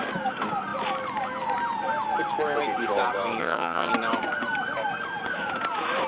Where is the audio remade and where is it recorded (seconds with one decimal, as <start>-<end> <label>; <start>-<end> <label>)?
0.0-3.4 recorded; 3.4-3.9 remade; 3.9-6.1 recorded